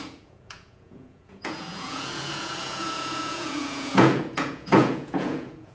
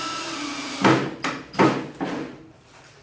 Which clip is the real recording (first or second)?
second